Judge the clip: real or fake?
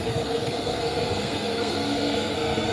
fake